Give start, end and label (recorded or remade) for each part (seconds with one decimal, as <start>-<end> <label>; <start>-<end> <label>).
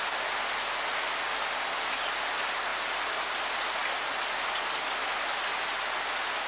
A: 0.0-6.5 recorded